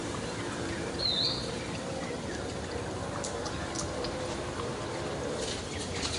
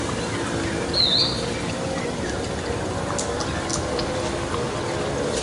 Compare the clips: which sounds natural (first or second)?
second